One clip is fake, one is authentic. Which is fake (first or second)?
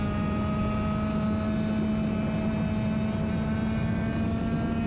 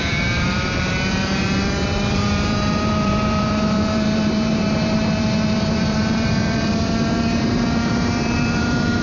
second